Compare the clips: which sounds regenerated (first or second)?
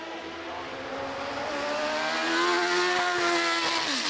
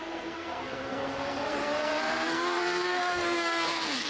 second